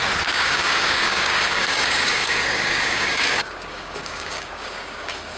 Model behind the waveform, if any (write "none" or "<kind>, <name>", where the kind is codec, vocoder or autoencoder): codec, DAC